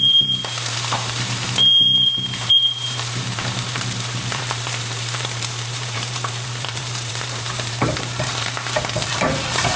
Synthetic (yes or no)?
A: yes